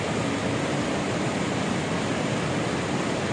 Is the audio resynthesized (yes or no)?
no